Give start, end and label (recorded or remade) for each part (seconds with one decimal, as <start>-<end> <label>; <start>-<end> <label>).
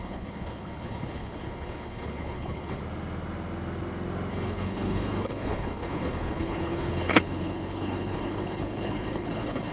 0.0-2.8 remade; 2.8-4.3 recorded; 4.3-9.7 remade